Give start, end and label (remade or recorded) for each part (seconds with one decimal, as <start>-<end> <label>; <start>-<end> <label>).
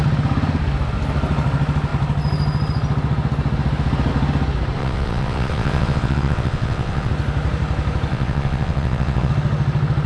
0.0-4.8 recorded; 4.8-7.1 remade; 7.1-8.1 recorded; 8.1-9.3 remade; 9.3-10.1 recorded